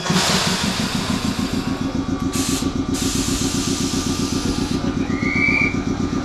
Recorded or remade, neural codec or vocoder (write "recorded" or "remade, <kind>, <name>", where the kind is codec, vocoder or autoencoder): recorded